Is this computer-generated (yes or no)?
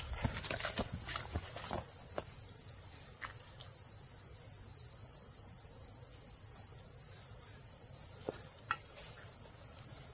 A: no